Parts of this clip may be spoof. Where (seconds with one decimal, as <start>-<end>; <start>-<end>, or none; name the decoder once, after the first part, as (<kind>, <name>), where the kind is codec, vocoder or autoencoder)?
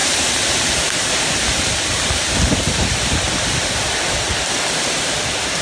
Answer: none